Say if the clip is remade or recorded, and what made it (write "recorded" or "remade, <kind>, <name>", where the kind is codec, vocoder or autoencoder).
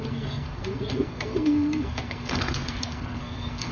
remade, codec, SNAC